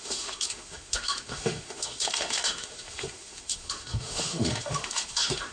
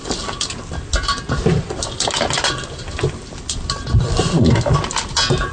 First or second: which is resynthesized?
first